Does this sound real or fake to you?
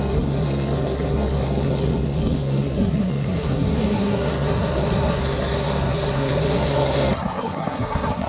fake